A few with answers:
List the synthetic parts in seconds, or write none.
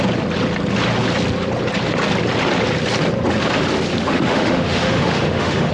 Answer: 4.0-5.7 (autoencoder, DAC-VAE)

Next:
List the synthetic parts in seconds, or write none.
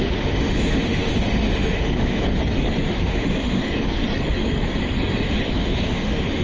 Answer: 0.0-2.4 (autoencoder, DAC-VAE); 2.9-4.0; 5.3-6.4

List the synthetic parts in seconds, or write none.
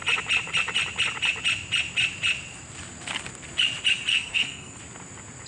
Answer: 4.1-4.8 (codec, SNAC)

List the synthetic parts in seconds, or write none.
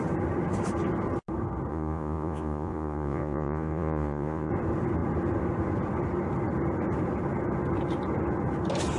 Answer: 1.7-4.5 (vocoder, Vocos)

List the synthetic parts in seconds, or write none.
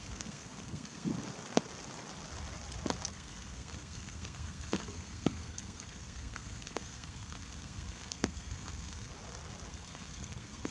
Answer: 0.0-1.1 (codec, SNAC); 3.1-9.1; 9.7-10.7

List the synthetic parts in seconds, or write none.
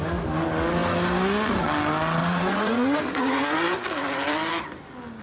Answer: 2.2-3.0 (vocoder, Vocos)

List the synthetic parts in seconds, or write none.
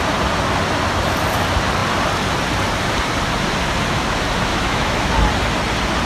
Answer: 4.5-5.1 (autoencoder, DAC-VAE)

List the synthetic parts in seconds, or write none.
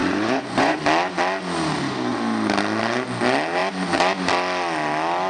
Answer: 0.0-0.8 (vocoder, Vocos)